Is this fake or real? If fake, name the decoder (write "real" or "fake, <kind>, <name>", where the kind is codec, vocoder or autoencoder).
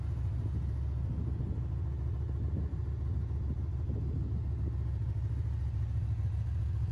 real